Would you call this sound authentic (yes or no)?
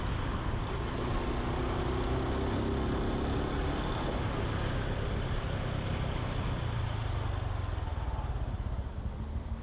yes